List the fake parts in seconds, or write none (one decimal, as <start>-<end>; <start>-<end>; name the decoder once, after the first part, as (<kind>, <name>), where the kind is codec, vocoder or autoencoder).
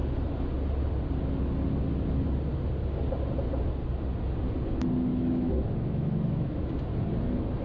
5.1-6.6 (autoencoder, DAC-VAE)